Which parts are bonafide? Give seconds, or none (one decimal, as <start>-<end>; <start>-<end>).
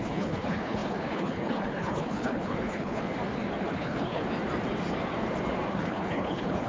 3.0-3.6; 4.2-5.7